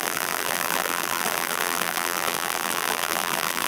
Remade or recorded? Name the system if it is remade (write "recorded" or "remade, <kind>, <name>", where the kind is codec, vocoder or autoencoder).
remade, vocoder, BigVGAN v2